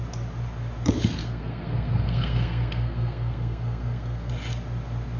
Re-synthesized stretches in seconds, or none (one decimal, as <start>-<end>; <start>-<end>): 1.2-4.3